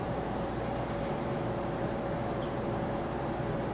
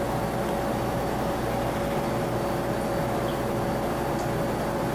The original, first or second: second